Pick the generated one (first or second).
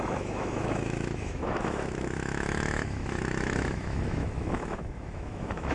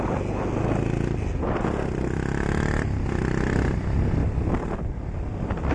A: first